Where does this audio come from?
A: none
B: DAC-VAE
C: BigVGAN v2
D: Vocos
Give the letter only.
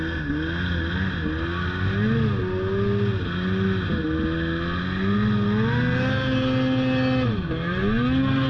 A